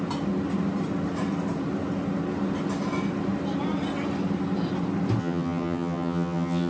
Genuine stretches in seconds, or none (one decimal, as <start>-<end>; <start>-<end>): 0.0-5.2